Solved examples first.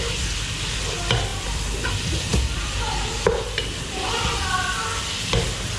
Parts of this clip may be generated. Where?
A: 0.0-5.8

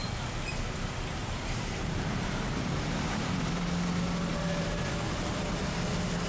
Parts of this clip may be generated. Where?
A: 1.2-3.5; 4.3-5.6

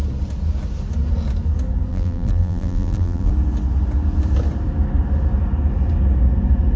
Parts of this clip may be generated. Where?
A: 1.9-3.3

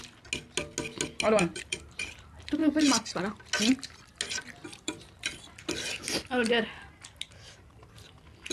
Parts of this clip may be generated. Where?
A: 1.5-2.1; 4.6-5.6

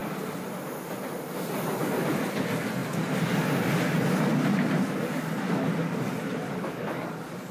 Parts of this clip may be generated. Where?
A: none